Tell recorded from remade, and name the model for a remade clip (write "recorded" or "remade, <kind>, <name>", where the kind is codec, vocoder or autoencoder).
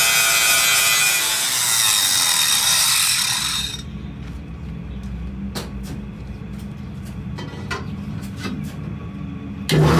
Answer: recorded